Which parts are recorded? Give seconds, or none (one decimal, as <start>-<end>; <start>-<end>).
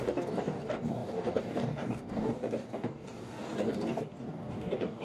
none